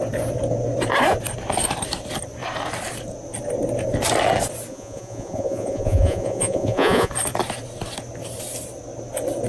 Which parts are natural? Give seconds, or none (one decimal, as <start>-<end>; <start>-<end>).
0.0-4.7; 7.1-9.5